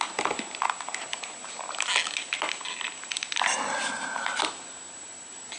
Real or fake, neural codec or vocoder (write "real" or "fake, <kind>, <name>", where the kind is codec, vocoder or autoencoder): real